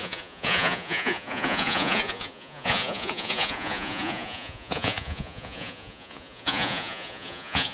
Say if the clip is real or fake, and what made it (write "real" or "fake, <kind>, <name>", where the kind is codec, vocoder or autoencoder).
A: fake, vocoder, Vocos